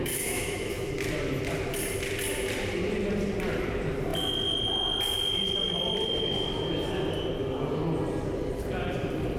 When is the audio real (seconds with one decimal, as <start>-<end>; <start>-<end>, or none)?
0.9-9.4